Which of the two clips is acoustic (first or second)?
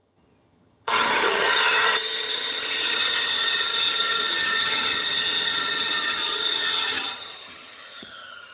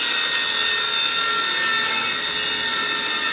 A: second